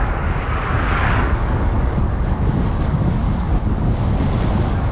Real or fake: fake